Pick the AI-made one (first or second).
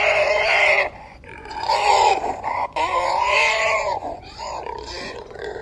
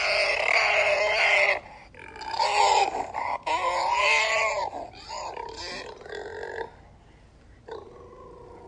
first